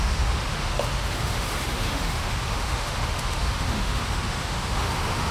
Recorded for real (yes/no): no